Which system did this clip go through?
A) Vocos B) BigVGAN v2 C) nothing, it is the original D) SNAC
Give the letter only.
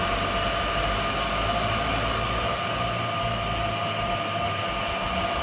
C